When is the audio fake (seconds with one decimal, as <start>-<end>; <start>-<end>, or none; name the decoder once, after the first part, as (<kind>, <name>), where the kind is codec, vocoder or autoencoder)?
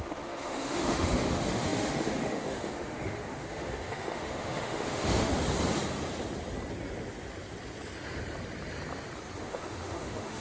0.0-5.3 (autoencoder, DAC-VAE); 9.4-10.4